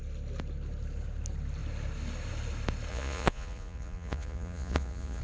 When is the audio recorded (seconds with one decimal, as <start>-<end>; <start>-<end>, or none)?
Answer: 0.0-2.9